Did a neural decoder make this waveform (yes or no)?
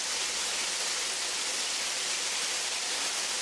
no